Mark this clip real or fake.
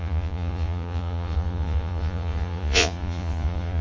fake